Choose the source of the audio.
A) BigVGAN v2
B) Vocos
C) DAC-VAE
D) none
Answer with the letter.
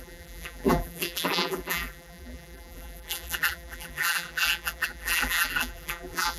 A